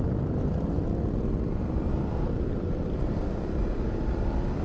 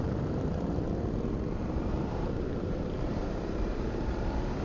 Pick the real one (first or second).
first